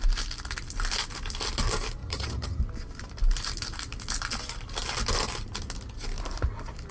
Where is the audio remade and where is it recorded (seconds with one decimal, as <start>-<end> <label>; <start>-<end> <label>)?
0.0-2.0 recorded; 2.0-2.6 remade; 2.6-6.9 recorded